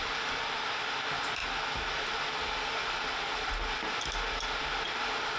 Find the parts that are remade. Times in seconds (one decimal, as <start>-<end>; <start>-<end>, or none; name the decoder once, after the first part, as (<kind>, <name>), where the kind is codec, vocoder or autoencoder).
none